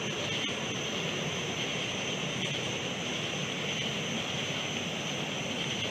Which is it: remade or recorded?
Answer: recorded